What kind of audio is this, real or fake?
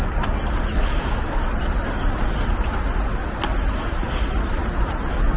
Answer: real